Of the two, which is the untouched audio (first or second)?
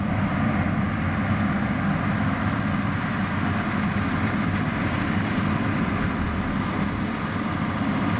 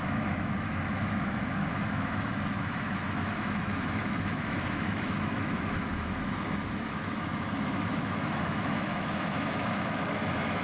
first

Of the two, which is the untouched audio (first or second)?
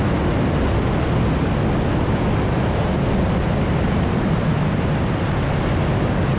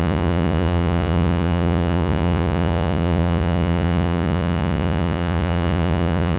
first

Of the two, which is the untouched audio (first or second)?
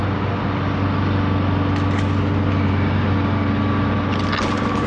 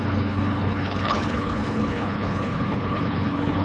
first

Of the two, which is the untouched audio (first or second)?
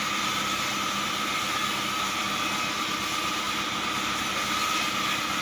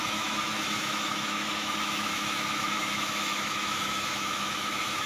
first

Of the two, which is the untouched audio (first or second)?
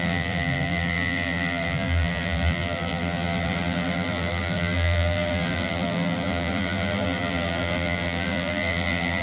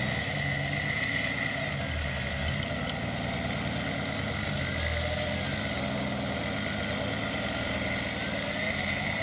second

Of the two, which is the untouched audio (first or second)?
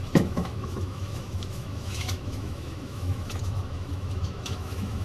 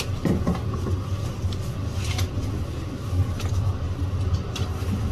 second